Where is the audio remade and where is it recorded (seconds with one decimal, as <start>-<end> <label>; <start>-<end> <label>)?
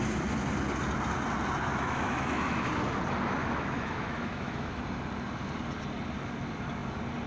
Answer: 0.0-1.7 recorded; 1.7-2.7 remade; 2.7-3.4 recorded; 3.4-4.8 remade; 4.8-7.3 recorded